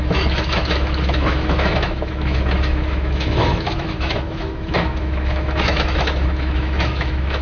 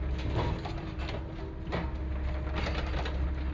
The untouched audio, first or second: second